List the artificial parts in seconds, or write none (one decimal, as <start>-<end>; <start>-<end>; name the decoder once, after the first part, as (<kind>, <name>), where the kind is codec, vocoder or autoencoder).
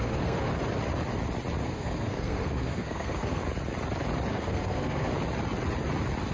0.0-0.5 (codec, SNAC); 1.6-3.4; 4.3-5.1